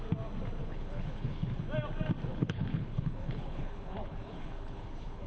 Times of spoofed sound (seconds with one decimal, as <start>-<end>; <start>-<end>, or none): 0.6-1.6; 2.3-5.3